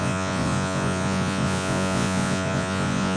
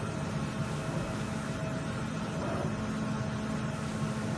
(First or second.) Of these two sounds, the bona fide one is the second